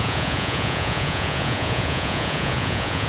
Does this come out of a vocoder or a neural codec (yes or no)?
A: yes